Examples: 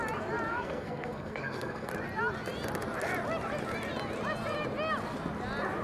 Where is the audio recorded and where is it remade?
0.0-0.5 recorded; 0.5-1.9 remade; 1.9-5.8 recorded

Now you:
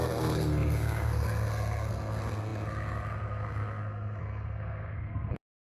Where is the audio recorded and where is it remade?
0.0-5.6 remade

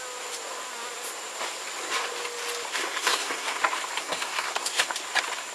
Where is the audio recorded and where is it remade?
0.0-2.7 recorded; 2.7-3.6 remade; 3.6-4.0 recorded; 4.0-4.8 remade; 4.8-5.5 recorded

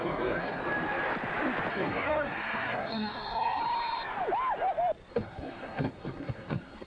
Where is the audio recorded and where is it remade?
0.0-0.6 remade; 0.6-1.7 recorded; 1.7-3.6 remade; 3.6-5.1 recorded; 5.1-6.9 remade

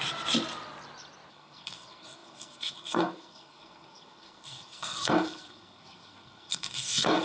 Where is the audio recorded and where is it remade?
0.0-1.3 recorded; 1.3-7.2 remade